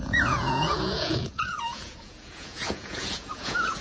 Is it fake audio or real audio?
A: fake